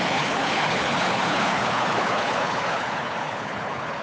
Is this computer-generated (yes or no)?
yes